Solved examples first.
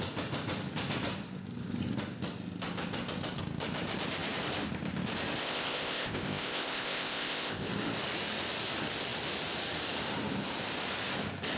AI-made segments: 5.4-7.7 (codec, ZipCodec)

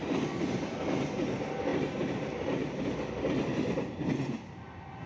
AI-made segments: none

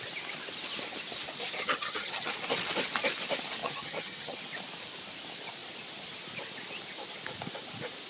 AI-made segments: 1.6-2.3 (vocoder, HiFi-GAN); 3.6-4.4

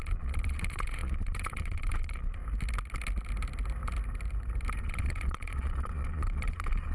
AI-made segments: 0.0-2.4 (vocoder, Vocos); 4.8-6.9

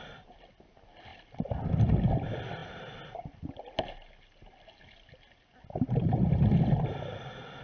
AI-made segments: none